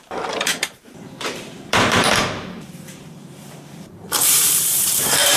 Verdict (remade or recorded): remade